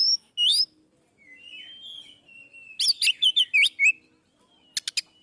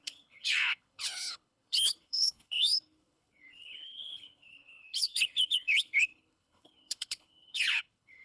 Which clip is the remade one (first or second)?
second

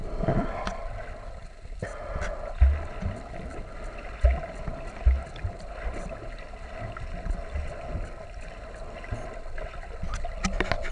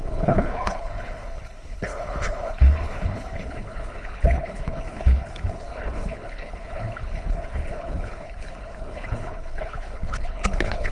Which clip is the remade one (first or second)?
second